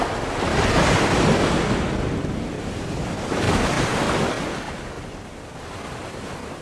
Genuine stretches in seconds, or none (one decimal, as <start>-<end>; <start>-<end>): 0.0-6.6